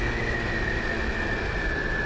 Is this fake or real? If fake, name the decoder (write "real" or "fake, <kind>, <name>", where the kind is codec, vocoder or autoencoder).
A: real